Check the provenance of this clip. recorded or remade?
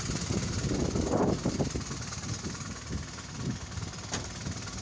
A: recorded